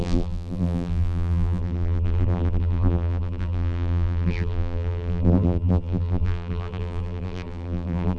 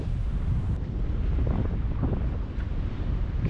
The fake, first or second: first